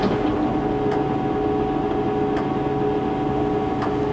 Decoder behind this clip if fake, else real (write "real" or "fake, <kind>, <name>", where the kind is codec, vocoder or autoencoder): real